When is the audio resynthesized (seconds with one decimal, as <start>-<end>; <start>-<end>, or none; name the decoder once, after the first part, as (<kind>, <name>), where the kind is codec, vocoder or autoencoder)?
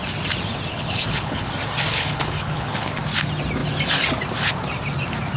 0.7-1.5 (codec, HILCodec); 1.9-3.0